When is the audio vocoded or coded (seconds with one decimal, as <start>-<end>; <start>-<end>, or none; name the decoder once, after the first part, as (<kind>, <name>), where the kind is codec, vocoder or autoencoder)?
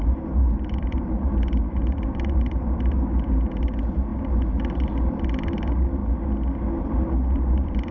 0.0-6.0 (vocoder, BigVGAN v2); 6.8-7.9